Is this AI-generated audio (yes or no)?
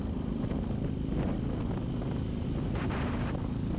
no